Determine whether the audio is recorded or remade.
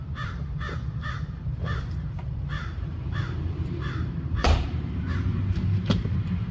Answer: remade